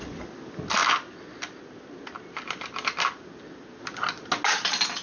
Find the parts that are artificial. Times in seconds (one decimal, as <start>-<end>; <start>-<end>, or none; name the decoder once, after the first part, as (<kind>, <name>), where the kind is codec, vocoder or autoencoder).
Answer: none